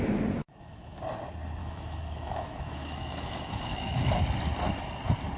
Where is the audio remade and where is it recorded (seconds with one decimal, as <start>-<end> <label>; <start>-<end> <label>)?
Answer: 0.0-0.4 recorded; 0.4-1.0 remade; 1.0-1.6 recorded; 1.6-4.2 remade; 4.2-5.4 recorded

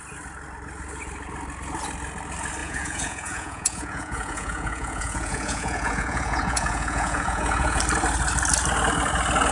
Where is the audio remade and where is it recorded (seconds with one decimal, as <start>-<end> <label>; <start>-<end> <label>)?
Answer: 0.0-2.6 recorded; 2.6-7.8 remade; 7.8-9.5 recorded

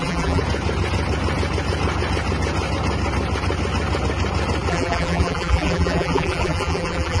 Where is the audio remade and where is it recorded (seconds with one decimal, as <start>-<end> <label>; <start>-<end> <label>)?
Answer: 0.0-0.4 remade; 0.4-4.7 recorded; 4.7-7.2 remade

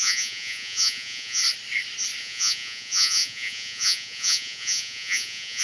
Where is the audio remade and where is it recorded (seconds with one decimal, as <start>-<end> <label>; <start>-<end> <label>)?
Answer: 0.0-1.4 remade; 1.4-2.2 recorded; 2.2-5.6 remade

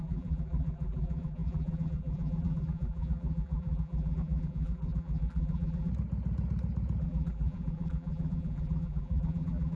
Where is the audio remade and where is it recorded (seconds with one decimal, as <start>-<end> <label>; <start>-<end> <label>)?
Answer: 0.0-5.9 remade; 5.9-7.0 recorded; 7.0-9.8 remade

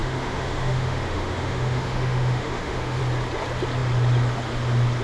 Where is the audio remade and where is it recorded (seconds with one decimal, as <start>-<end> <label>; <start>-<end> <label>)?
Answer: 0.0-3.0 remade; 3.0-5.0 recorded

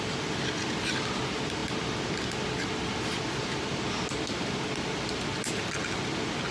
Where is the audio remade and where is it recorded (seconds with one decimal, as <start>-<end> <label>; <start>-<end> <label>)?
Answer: 0.0-6.5 recorded

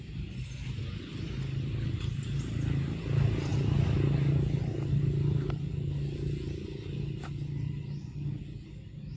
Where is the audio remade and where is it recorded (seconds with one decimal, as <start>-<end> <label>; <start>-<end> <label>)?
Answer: 0.0-9.2 recorded